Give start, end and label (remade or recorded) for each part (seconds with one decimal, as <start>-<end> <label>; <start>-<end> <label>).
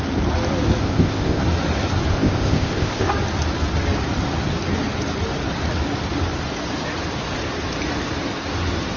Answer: 0.0-0.8 recorded; 0.8-1.4 remade; 1.4-2.1 recorded; 2.1-3.1 remade; 3.1-9.0 recorded